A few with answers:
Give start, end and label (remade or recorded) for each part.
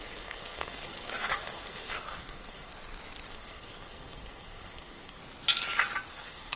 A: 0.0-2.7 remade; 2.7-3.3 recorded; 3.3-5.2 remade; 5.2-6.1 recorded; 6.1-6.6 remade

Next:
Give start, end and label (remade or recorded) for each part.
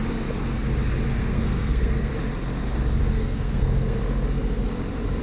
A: 0.0-1.1 recorded; 1.1-2.1 remade; 2.1-3.0 recorded; 3.0-4.0 remade; 4.0-5.2 recorded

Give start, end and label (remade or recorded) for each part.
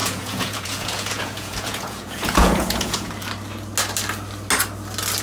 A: 0.0-3.1 remade; 3.1-5.2 recorded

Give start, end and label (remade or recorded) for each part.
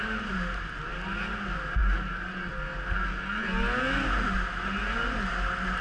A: 0.0-5.8 recorded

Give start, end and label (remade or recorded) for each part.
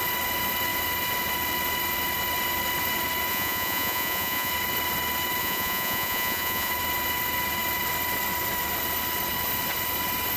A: 0.0-3.3 recorded; 3.3-4.5 remade; 4.5-5.4 recorded; 5.4-6.7 remade; 6.7-10.4 recorded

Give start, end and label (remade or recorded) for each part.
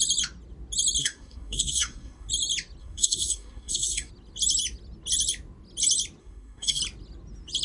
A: 0.0-1.0 recorded; 1.0-2.3 remade; 2.3-2.8 recorded; 2.8-4.1 remade; 4.1-6.2 recorded; 6.2-6.8 remade; 6.8-7.6 recorded